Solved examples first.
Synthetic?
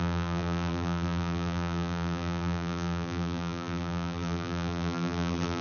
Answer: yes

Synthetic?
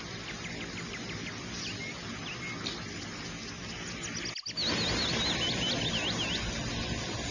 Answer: no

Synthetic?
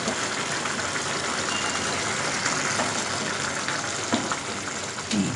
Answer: no